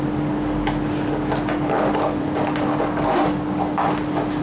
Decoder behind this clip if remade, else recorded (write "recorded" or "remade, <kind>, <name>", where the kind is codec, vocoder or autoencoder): recorded